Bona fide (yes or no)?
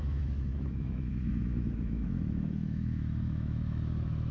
no